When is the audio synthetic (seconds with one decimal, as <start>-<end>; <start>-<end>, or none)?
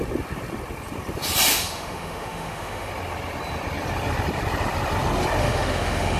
1.5-2.9; 5.4-6.2